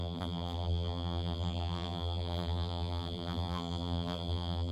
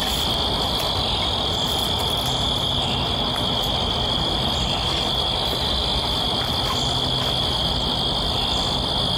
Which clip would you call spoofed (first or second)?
first